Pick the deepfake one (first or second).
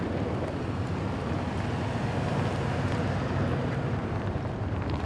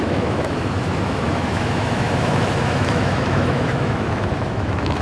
second